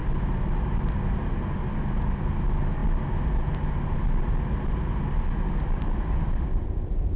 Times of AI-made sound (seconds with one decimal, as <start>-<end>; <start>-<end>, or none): none